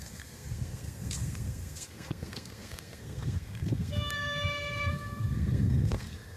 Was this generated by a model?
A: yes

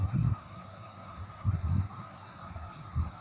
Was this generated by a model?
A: yes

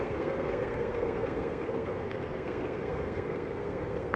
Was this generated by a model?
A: yes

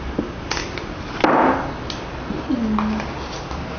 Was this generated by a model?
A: no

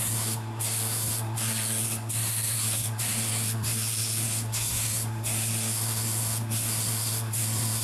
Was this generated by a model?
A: yes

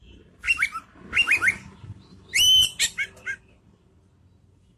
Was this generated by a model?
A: no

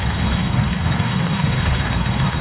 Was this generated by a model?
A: yes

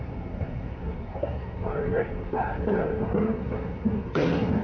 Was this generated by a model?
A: yes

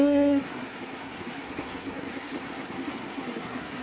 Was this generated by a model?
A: yes